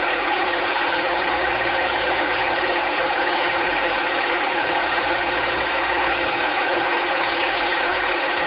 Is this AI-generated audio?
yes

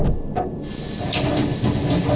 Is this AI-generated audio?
no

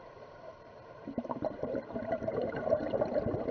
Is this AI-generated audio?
yes